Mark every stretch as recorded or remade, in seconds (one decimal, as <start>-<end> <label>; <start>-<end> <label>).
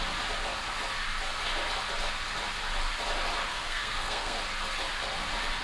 0.0-3.5 recorded; 3.5-4.4 remade; 4.4-5.6 recorded